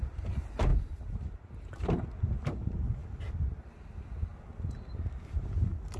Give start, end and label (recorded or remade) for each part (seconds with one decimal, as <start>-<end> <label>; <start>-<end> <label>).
0.0-6.0 recorded